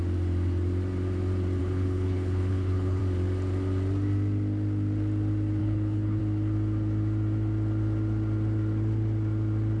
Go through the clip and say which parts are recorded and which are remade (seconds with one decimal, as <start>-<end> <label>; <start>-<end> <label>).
0.0-1.6 recorded; 1.6-3.0 remade; 3.0-5.6 recorded; 5.6-6.2 remade; 6.2-9.8 recorded